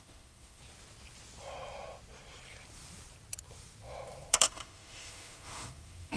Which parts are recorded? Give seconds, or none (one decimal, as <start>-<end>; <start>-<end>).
0.6-4.3